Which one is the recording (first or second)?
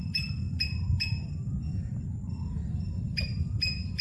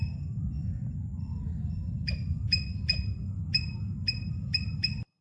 second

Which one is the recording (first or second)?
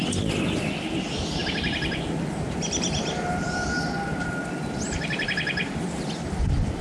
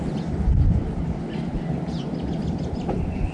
second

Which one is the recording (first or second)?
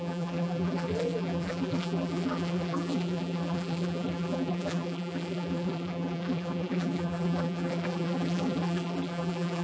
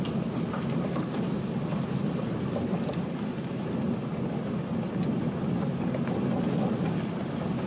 second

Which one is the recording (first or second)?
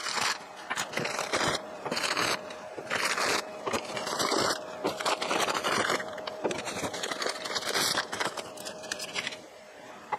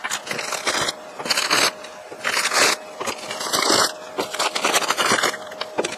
second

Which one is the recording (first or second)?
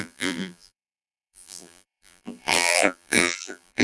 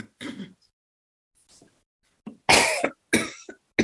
second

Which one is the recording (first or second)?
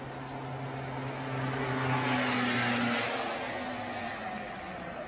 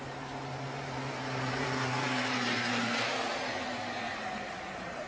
first